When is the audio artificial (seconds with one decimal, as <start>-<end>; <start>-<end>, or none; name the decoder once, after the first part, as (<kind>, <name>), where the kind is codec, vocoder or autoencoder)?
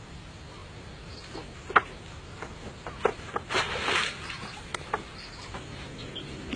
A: 0.0-0.6 (vocoder, BigVGAN v2); 2.5-4.7